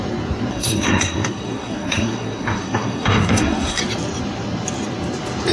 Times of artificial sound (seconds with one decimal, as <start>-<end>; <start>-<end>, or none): 0.5-3.8